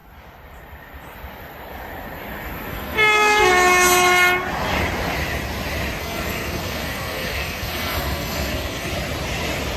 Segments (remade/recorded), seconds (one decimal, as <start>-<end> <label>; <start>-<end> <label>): 0.0-2.7 recorded; 2.7-3.5 remade; 3.5-6.0 recorded; 6.0-8.9 remade; 8.9-9.8 recorded